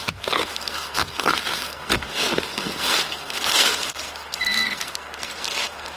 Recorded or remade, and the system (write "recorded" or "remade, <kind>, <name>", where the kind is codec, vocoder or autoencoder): remade, codec, SNAC